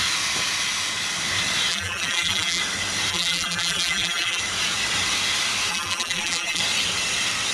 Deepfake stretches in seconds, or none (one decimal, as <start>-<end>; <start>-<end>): 1.7-2.6; 3.1-4.4; 5.7-6.6